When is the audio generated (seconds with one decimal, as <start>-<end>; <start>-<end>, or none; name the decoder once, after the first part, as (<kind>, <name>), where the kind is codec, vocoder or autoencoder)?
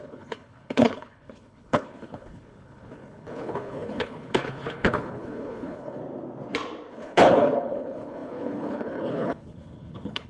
0.0-6.0 (codec, HILCodec); 6.9-10.3